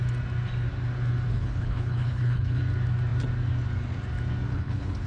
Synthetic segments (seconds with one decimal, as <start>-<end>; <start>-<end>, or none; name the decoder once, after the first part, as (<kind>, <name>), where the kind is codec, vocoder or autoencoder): 1.3-2.6 (codec, HILCodec); 4.5-5.1